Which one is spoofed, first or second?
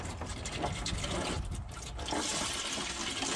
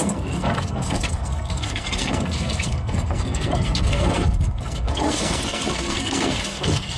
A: second